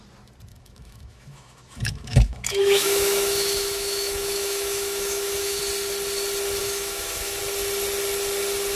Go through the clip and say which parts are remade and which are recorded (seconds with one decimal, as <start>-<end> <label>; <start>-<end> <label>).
0.0-0.5 recorded; 0.5-5.6 remade; 5.6-6.6 recorded; 6.6-7.4 remade; 7.4-8.8 recorded